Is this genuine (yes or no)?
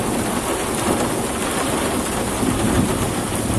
yes